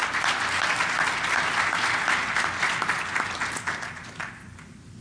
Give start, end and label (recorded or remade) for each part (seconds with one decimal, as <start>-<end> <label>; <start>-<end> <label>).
0.0-5.0 recorded